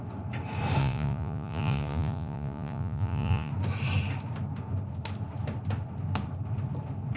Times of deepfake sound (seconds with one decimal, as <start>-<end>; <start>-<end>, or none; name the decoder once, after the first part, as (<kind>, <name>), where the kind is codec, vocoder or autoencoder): 0.8-3.5 (vocoder, Vocos)